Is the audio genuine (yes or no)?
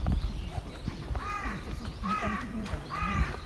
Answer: no